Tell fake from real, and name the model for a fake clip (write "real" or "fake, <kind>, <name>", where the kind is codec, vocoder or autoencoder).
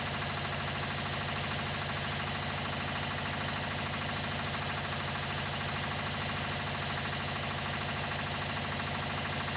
real